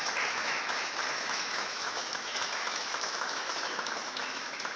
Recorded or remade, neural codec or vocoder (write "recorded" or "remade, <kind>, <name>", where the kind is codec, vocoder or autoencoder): remade, autoencoder, DAC-VAE